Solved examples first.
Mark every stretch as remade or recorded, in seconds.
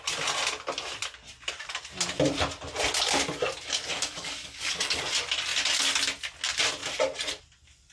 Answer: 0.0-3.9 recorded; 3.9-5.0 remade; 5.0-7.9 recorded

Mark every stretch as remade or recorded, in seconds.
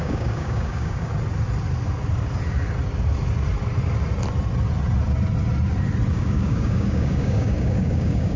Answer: 0.0-1.1 remade; 1.1-6.1 recorded; 6.1-8.4 remade